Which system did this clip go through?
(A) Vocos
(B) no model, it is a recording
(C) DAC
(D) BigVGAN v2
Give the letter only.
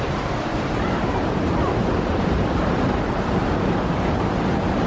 D